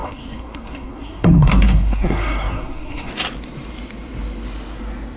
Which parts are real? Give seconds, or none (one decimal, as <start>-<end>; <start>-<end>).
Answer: 3.1-5.2